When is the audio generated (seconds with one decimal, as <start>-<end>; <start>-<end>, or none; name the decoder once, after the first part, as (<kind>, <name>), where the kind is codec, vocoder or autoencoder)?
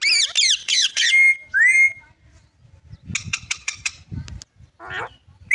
0.6-1.1 (codec, HILCodec); 3.2-3.9